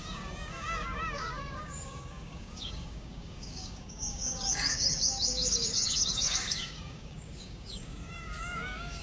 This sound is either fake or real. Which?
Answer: fake